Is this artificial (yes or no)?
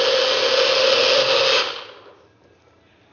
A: no